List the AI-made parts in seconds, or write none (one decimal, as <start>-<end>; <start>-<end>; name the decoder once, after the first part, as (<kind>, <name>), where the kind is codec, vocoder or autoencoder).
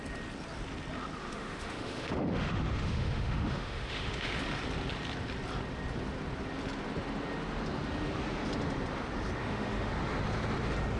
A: 1.2-4.4 (autoencoder, DAC-VAE); 9.4-9.9